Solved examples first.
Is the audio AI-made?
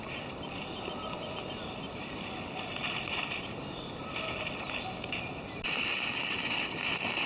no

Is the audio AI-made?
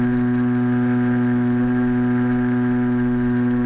no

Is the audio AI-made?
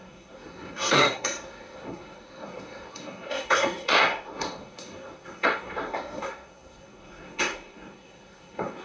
yes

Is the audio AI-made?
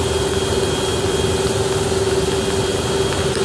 no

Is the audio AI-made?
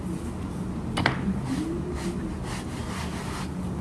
no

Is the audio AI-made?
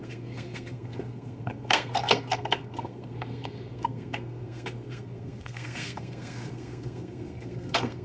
yes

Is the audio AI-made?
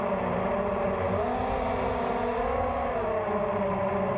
no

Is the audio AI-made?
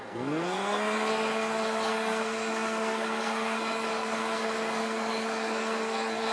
yes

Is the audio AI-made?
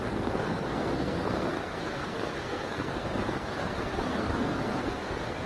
yes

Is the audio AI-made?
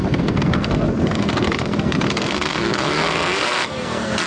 yes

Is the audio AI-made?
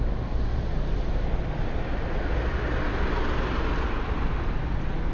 no